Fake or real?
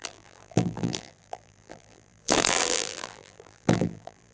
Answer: fake